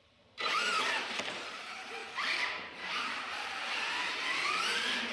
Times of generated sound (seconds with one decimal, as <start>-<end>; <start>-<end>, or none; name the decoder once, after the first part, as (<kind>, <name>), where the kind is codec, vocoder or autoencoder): 0.0-5.1 (vocoder, BigVGAN v2)